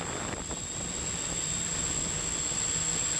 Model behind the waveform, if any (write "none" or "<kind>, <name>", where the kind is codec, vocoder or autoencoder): none